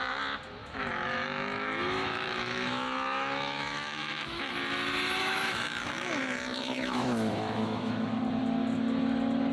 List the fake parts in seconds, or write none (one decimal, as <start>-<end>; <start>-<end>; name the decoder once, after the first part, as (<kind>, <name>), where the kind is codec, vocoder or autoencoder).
0.6-4.5 (autoencoder, DAC-VAE); 5.2-8.1